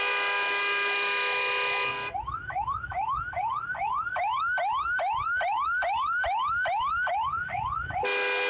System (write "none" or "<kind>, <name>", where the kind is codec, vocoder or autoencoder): none